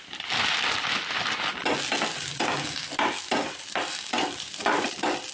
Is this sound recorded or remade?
recorded